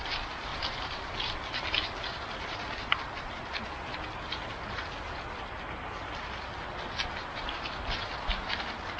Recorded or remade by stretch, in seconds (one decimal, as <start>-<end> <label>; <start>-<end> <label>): 0.0-0.5 recorded; 0.5-1.0 remade; 1.0-2.8 recorded; 2.8-3.4 remade; 3.4-9.0 recorded

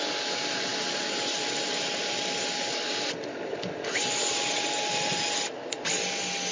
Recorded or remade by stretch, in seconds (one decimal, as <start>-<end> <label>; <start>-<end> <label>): 0.0-6.5 recorded

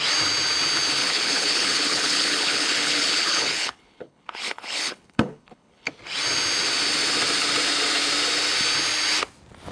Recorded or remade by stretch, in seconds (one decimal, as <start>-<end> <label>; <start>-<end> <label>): 0.0-1.0 recorded; 1.0-5.9 remade; 5.9-9.7 recorded

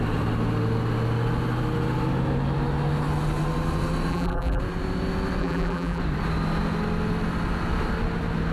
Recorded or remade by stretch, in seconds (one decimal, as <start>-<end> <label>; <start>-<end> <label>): 0.0-4.1 recorded; 4.1-4.6 remade; 4.6-5.4 recorded; 5.4-6.0 remade; 6.0-8.5 recorded

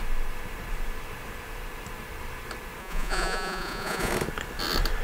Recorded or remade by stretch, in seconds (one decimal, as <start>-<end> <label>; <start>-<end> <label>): 0.0-2.8 recorded; 2.8-4.1 remade; 4.1-5.0 recorded